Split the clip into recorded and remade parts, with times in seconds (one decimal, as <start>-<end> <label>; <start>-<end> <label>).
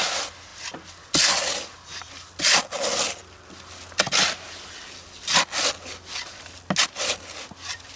0.0-8.0 recorded